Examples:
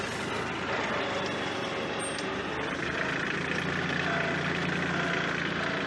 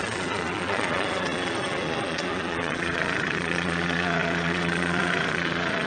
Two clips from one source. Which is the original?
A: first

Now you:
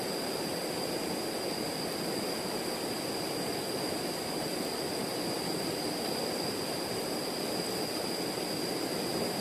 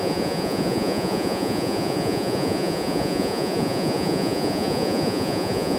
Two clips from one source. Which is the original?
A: first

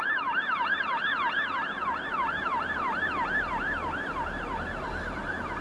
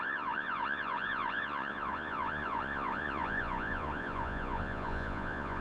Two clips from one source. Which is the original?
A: first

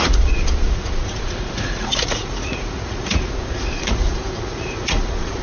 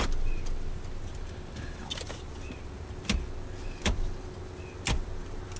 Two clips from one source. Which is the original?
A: second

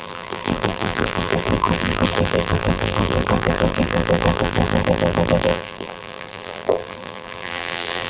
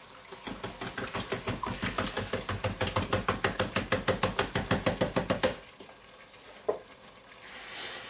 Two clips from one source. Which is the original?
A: second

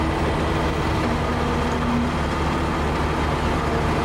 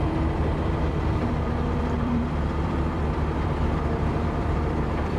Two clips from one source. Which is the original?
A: first